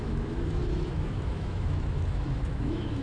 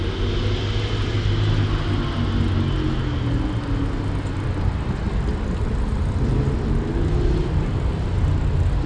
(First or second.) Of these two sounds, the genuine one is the second